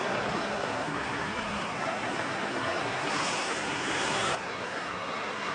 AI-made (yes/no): yes